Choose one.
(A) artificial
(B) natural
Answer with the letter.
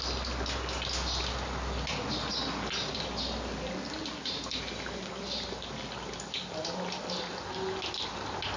B